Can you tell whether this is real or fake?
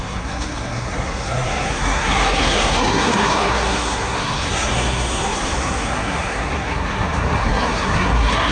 fake